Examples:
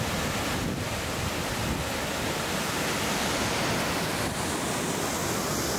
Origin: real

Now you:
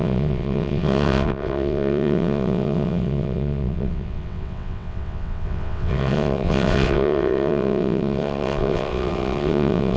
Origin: fake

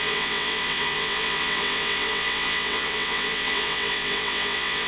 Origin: fake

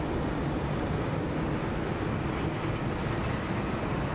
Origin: real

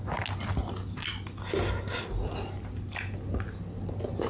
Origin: real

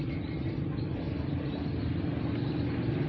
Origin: real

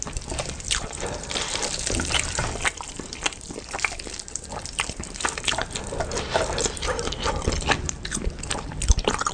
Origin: fake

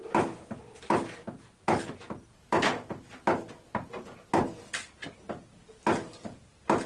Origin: real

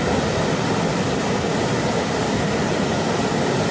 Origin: real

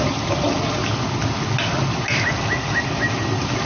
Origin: real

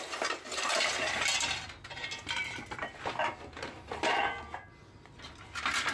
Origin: real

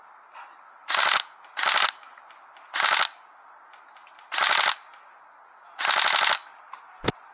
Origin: real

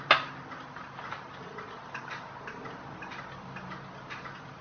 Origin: real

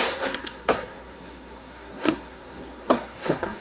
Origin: fake